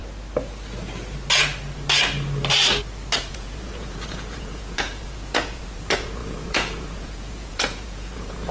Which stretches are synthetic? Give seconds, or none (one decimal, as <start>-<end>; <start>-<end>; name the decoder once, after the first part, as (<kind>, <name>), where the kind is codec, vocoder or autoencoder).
3.2-8.5 (vocoder, Vocos)